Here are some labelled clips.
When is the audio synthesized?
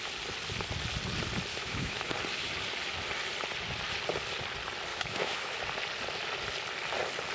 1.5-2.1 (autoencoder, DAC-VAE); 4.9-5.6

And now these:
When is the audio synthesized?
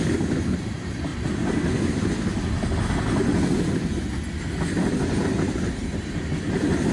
none